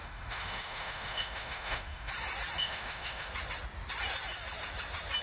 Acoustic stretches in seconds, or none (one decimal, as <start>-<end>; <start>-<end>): 2.1-2.6; 3.3-5.2

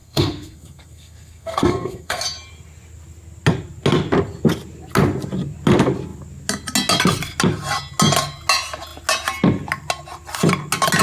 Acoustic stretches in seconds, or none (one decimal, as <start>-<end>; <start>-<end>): 2.2-11.0

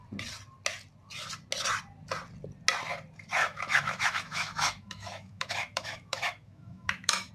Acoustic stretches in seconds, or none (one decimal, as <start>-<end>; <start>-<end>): 0.0-3.4

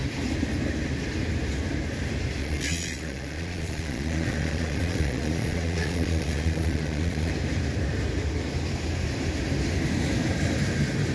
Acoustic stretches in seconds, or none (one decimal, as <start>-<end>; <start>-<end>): 0.0-2.4; 7.3-11.1

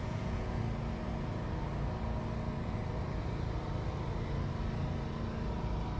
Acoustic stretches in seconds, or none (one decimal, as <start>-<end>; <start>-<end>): 0.6-6.0

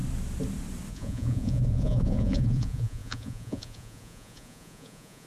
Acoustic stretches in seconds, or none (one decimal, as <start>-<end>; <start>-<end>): 0.0-0.9

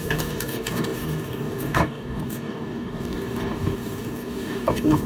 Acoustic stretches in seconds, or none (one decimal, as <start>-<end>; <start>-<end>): none